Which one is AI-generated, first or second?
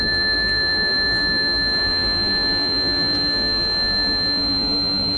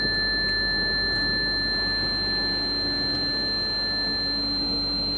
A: first